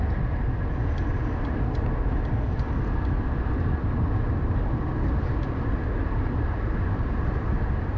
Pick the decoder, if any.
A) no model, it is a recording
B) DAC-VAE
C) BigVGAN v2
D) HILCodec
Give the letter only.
A